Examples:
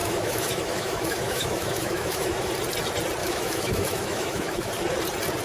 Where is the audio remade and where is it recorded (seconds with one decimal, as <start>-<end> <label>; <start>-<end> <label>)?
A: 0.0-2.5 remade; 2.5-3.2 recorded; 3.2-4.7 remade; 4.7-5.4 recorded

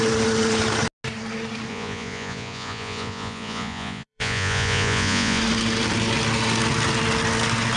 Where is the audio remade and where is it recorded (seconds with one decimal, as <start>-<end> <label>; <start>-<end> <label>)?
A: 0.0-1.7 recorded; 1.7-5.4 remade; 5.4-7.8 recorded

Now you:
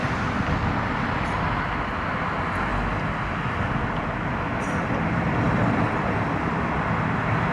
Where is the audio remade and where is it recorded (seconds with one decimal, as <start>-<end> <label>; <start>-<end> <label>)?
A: 0.0-7.5 recorded

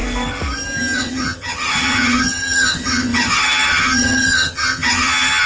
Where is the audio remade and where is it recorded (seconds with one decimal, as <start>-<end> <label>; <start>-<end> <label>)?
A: 0.0-1.0 recorded; 1.0-5.5 remade